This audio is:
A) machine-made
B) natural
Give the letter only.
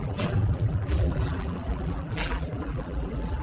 A